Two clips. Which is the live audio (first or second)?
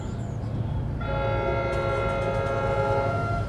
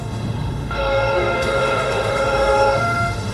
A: first